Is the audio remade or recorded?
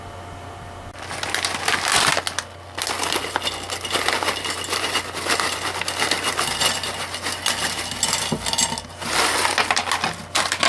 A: recorded